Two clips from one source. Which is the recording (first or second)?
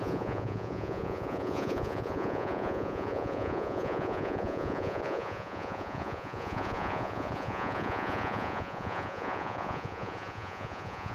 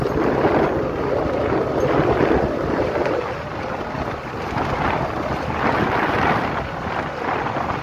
second